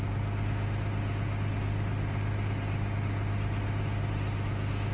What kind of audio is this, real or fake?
real